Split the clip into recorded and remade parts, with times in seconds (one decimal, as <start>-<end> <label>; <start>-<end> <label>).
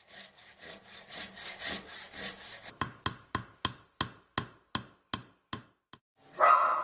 0.0-6.8 recorded